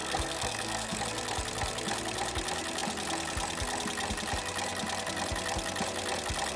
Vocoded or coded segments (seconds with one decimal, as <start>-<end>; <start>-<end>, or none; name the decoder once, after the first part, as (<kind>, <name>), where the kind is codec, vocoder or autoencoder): 0.0-1.0 (codec, SNAC)